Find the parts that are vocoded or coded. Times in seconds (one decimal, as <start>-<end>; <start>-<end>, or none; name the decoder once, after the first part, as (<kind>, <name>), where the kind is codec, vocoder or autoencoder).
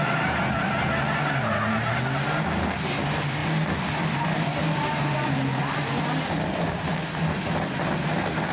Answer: none